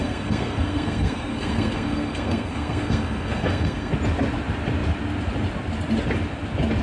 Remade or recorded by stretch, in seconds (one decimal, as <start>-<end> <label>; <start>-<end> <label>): 0.0-3.9 remade; 3.9-6.8 recorded